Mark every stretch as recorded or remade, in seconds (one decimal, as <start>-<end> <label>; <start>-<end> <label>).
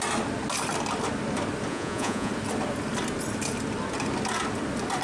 0.0-1.7 recorded; 1.7-2.3 remade; 2.3-5.0 recorded